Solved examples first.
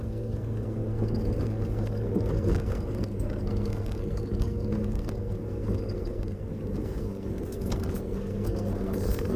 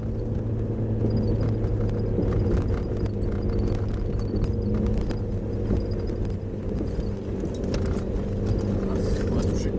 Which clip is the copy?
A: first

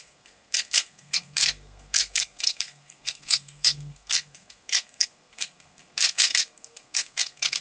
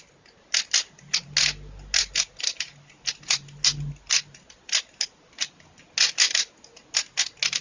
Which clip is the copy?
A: first